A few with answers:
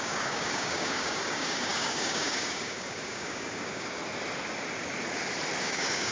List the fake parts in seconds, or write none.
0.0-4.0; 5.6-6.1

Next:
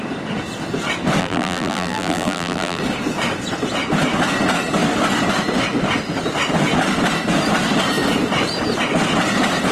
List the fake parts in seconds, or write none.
1.2-2.8

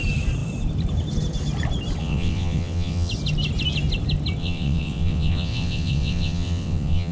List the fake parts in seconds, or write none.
2.0-3.1; 4.4-7.1

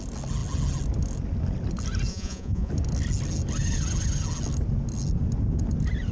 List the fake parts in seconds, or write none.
2.1-2.7